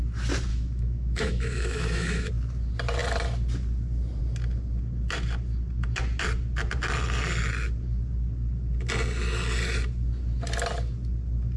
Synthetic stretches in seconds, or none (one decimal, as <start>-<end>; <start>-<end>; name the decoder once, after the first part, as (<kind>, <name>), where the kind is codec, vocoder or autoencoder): 0.5-2.3 (autoencoder, DAC-VAE)